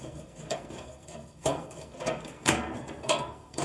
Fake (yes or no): yes